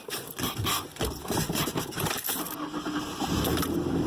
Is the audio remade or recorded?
recorded